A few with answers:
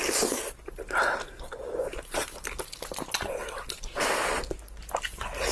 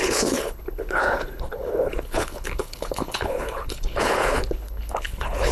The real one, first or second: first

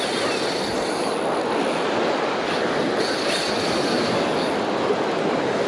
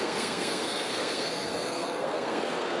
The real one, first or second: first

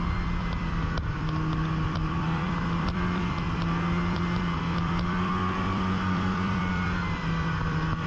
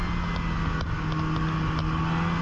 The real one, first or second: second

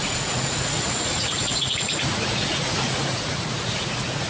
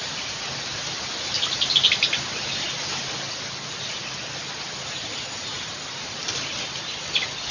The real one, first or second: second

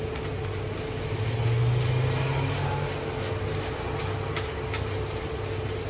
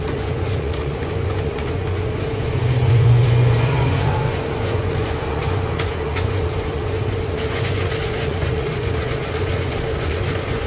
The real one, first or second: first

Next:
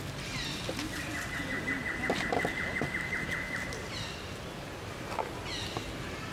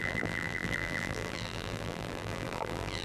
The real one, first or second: first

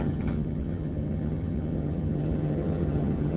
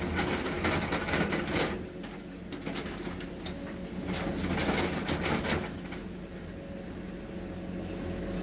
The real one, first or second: second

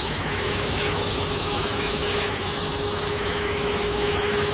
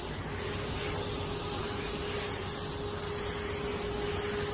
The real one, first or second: second